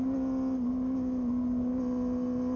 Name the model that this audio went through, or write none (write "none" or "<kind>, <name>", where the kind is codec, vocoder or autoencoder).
none